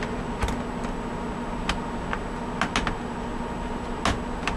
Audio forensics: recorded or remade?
recorded